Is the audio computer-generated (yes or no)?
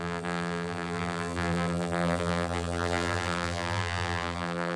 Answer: yes